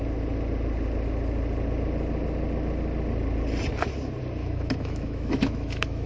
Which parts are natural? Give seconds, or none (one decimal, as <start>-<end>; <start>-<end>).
0.0-4.4